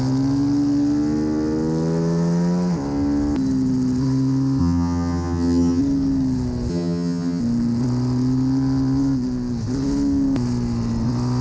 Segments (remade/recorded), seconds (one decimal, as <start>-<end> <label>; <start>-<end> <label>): 0.0-4.6 recorded; 4.6-5.8 remade; 5.8-6.7 recorded; 6.7-7.4 remade; 7.4-11.4 recorded